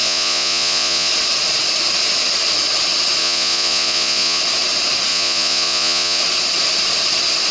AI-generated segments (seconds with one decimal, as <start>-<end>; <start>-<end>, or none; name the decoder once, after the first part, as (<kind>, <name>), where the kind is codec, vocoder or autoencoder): 0.0-1.1 (vocoder, Vocos); 3.2-4.4; 5.1-6.2